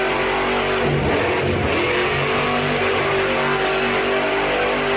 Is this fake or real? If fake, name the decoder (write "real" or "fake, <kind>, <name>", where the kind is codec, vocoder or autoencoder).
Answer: real